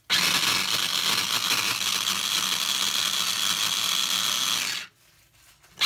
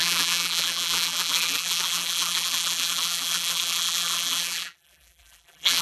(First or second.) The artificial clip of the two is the second